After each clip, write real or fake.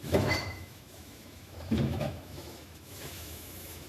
fake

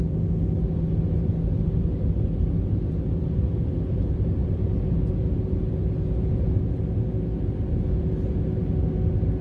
real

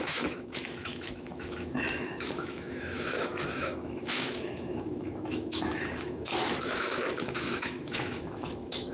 fake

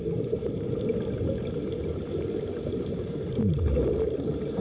real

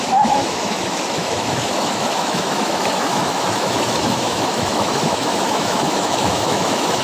fake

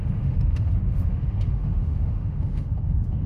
fake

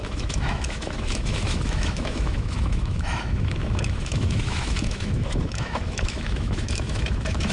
fake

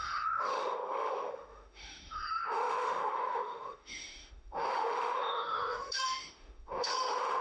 fake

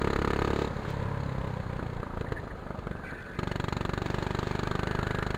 real